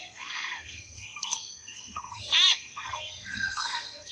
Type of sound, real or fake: fake